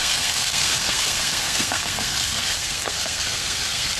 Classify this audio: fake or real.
fake